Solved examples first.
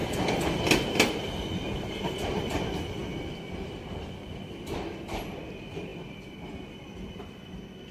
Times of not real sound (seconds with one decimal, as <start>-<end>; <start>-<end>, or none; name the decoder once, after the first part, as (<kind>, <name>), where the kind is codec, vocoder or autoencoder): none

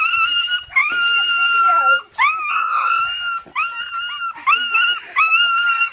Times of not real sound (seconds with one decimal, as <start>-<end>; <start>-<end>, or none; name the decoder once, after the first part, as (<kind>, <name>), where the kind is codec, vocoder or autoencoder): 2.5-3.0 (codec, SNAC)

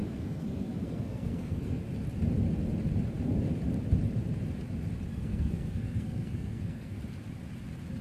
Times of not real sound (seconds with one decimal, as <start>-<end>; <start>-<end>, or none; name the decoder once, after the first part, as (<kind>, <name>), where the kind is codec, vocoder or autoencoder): 0.0-1.8 (codec, SNAC); 5.1-7.0

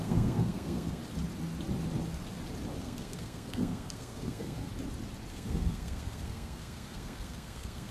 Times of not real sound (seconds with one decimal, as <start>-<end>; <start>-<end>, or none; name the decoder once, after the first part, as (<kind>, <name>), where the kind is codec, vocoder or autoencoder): 0.0-1.0 (codec, SNAC); 2.8-4.7; 5.3-7.9